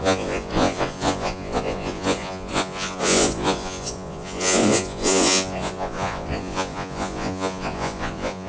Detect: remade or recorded remade